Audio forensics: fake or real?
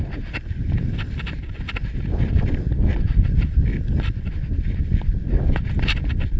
real